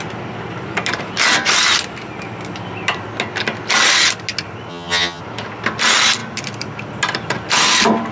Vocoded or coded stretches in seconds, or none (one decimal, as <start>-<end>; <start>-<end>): 4.7-5.2